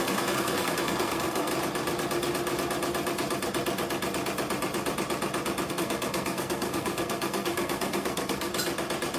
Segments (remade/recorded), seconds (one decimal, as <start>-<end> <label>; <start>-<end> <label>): 0.0-1.5 remade; 1.5-5.7 recorded; 5.7-8.5 remade; 8.5-9.2 recorded